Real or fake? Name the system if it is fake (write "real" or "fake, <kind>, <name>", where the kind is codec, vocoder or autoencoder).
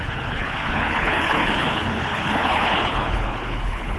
fake, codec, HILCodec